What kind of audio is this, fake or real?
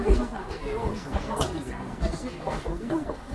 fake